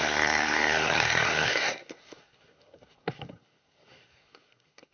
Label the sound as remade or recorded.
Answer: remade